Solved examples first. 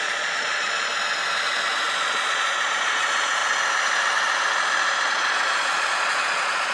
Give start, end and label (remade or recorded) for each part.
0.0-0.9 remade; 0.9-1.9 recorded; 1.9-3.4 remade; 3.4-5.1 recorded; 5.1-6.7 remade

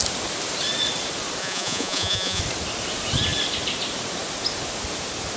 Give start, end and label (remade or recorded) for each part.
0.0-1.4 recorded; 1.4-2.4 remade; 2.4-5.4 recorded